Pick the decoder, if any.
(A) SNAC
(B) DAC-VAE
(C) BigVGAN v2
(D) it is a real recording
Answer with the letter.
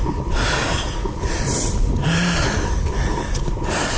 D